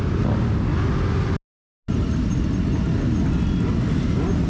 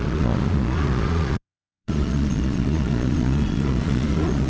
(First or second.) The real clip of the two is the first